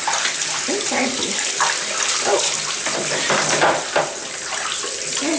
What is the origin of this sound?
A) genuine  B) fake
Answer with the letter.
A